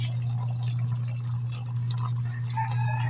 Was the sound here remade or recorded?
recorded